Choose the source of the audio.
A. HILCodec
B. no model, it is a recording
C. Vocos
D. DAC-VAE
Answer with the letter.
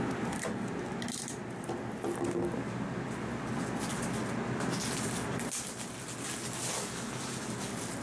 B